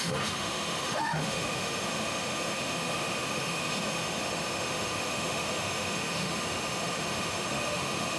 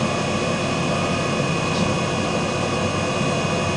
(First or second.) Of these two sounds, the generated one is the first